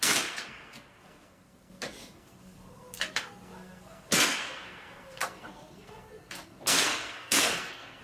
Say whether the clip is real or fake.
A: fake